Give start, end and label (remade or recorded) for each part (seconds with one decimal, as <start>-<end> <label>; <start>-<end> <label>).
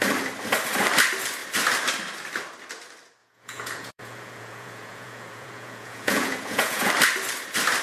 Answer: 0.0-3.2 recorded; 3.2-6.9 remade; 6.9-7.8 recorded